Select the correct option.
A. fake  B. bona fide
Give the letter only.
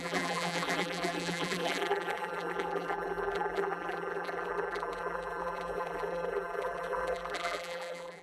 A